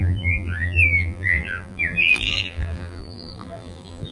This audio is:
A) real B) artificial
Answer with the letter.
B